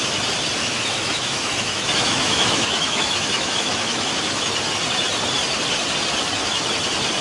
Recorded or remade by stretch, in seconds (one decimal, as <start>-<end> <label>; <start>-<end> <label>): 0.0-0.6 recorded; 0.6-4.1 remade; 4.1-7.2 recorded